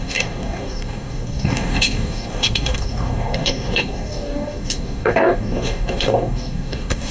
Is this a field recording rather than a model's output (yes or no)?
no